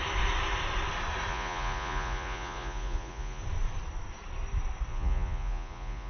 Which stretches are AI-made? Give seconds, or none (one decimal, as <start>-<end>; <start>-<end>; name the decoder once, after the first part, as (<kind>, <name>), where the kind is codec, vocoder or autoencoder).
1.3-3.4 (vocoder, Vocos); 4.9-6.1